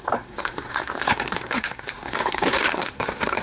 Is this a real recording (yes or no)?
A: no